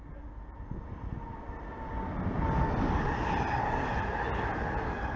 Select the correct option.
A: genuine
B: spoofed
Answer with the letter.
A